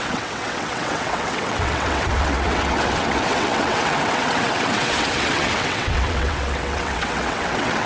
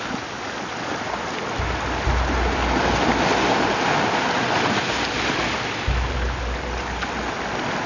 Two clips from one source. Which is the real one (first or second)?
second